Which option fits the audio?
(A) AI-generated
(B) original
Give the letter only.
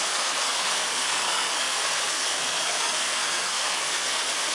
A